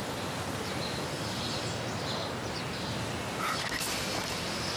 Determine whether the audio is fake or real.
real